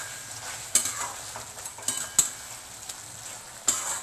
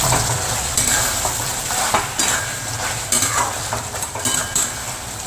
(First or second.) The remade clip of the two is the second